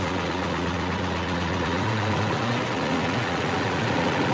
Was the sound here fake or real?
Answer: fake